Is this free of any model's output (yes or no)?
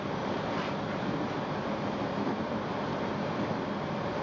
yes